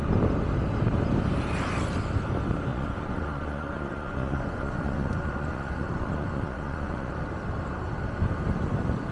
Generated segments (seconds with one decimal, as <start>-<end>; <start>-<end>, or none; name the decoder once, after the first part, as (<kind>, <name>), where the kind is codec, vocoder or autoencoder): 2.7-7.1 (vocoder, Vocos)